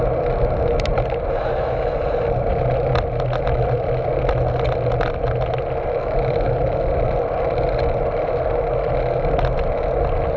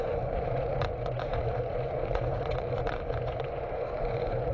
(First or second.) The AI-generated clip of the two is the second